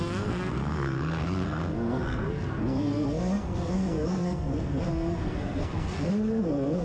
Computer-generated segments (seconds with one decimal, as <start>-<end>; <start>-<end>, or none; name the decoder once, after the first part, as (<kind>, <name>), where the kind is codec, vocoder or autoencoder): 0.0-6.8 (codec, SNAC)